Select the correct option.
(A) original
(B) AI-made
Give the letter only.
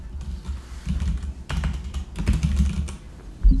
A